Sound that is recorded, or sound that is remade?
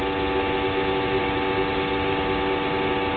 recorded